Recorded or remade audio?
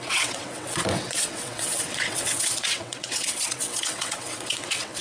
remade